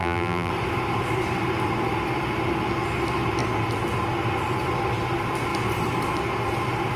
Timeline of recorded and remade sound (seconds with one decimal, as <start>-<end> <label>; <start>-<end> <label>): 0.0-0.5 remade; 0.5-7.0 recorded